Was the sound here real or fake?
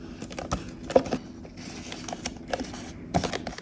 real